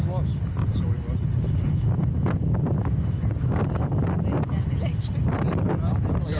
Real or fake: real